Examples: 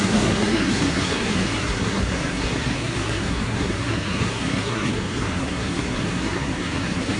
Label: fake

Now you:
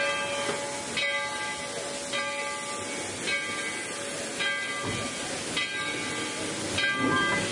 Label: real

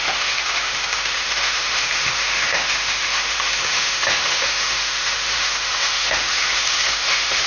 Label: fake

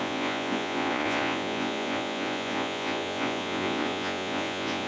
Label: fake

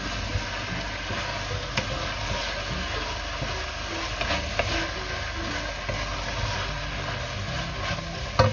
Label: real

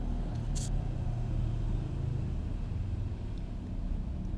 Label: real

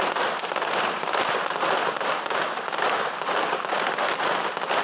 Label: real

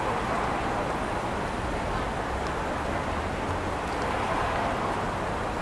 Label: real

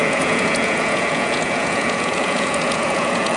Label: fake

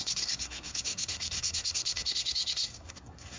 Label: fake